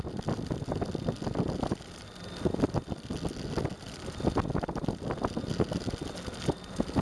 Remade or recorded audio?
recorded